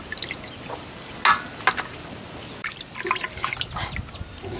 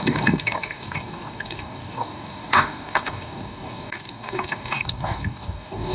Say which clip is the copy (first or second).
second